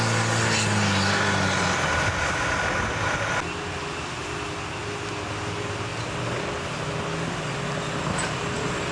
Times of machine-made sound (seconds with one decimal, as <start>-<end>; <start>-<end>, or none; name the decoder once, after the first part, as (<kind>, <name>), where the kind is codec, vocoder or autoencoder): none